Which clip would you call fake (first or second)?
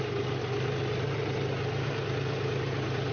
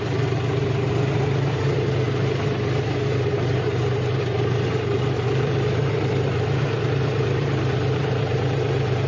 second